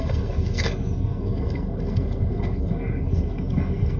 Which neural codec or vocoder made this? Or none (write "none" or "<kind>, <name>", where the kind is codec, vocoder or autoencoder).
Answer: codec, SNAC